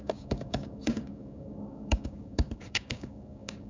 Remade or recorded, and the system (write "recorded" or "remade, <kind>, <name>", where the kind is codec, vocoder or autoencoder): remade, codec, DAC